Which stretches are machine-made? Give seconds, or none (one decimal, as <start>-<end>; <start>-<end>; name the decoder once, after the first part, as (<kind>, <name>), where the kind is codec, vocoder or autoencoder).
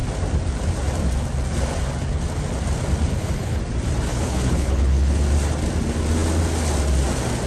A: 3.1-3.6 (codec, HILCodec); 4.1-5.2